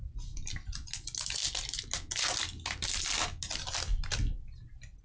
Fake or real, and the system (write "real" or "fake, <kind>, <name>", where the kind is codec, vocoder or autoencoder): real